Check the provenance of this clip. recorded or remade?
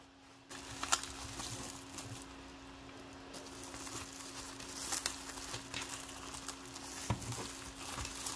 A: recorded